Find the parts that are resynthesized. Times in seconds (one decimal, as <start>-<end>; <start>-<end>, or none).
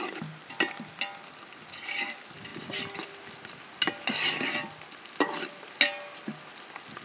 none